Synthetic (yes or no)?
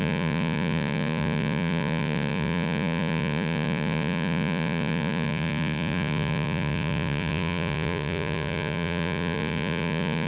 yes